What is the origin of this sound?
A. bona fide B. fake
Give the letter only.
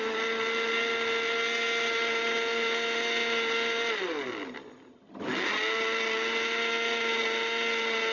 A